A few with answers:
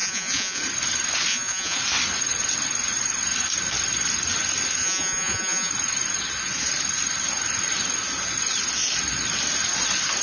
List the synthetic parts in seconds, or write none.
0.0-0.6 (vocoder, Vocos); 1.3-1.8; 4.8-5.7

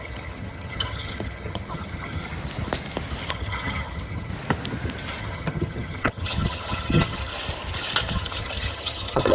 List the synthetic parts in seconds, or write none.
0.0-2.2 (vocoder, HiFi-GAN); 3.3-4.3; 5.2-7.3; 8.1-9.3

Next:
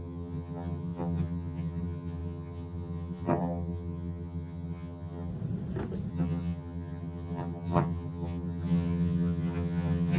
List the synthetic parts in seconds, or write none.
0.0-5.3 (vocoder, HiFi-GAN); 6.1-10.2

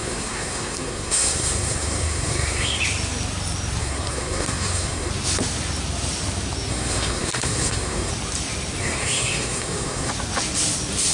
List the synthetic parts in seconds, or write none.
0.0-2.8 (codec, SNAC); 3.8-5.1; 6.7-8.1; 8.8-10.1